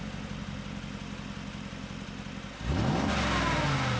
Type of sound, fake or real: real